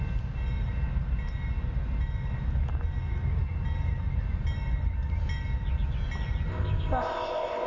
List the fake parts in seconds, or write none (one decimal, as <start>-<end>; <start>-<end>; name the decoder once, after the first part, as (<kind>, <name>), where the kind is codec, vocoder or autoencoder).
6.5-7.7 (codec, ZipCodec)